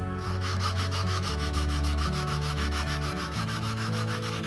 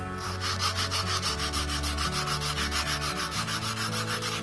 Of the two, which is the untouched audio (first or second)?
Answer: second